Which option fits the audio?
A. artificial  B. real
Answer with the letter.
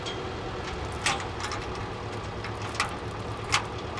B